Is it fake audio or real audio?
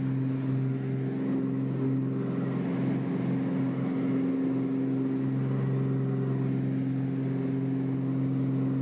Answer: real